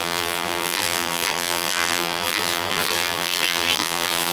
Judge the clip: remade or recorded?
remade